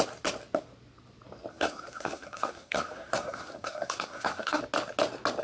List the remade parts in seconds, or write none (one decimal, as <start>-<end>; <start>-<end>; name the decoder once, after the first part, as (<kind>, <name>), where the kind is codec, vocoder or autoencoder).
1.5-4.6 (codec, SNAC)